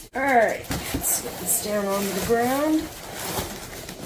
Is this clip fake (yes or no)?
no